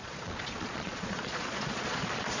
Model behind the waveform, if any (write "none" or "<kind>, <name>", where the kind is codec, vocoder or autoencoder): vocoder, Vocos